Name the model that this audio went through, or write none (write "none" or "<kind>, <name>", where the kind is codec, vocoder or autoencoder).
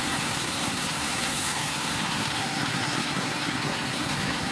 codec, SNAC